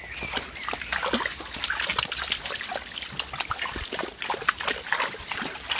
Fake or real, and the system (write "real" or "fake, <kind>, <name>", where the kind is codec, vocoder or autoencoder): real